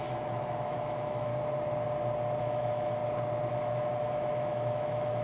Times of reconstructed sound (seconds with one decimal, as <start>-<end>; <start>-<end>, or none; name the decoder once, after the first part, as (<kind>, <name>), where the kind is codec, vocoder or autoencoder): 0.0-1.3 (autoencoder, DAC-VAE); 2.4-3.0; 3.5-5.2